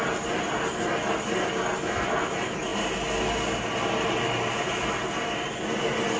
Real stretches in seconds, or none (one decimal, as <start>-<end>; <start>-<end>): 0.0-6.2